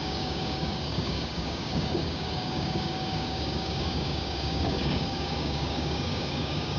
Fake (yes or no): yes